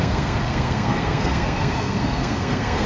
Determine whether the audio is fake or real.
fake